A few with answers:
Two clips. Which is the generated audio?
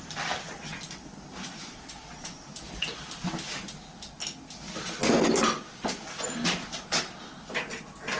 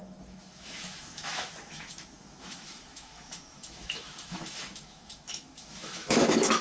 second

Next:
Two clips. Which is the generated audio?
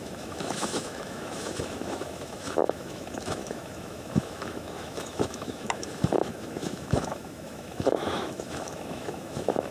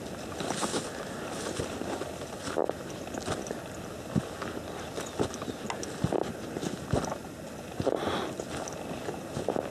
first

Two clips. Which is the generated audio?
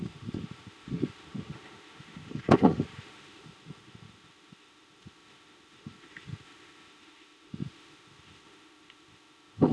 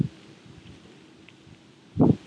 first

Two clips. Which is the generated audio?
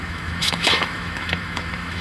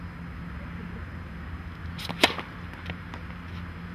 first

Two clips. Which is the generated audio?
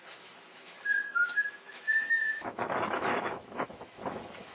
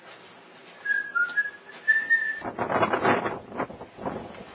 first